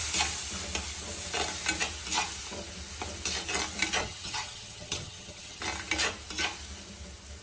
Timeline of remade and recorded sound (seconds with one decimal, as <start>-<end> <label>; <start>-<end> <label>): 0.0-4.0 recorded; 4.0-5.6 remade; 5.6-7.4 recorded